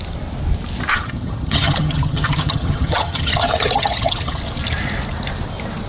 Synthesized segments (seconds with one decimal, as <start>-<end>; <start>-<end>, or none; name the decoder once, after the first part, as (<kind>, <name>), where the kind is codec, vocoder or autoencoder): 0.9-4.4 (vocoder, HiFi-GAN)

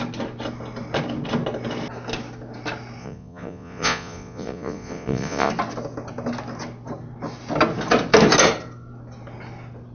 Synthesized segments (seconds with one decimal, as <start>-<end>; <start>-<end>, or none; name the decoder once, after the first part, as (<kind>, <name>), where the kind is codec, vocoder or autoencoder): 3.0-5.5 (vocoder, Vocos)

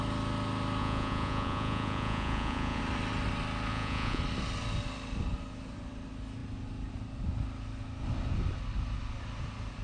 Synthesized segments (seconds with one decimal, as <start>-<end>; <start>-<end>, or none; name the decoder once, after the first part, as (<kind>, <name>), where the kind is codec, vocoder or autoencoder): 0.8-2.8 (vocoder, Vocos); 3.7-4.2

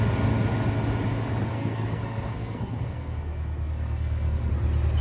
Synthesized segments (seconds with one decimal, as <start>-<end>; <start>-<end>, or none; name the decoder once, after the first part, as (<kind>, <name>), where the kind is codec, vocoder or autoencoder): 1.5-4.5 (codec, SNAC)

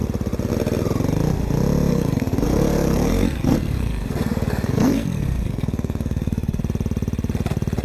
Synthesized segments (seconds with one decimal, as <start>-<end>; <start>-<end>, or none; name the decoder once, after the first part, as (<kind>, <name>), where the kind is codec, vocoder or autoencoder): 1.9-6.6 (codec, SNAC)

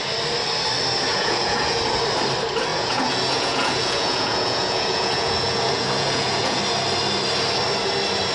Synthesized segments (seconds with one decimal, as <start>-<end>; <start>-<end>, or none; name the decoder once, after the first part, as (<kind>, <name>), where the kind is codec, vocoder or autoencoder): 1.1-1.8 (vocoder, Vocos); 2.7-6.6

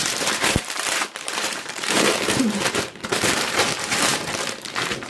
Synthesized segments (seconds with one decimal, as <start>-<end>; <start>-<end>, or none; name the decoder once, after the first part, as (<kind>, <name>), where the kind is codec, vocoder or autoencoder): 0.0-4.1 (vocoder, BigVGAN v2)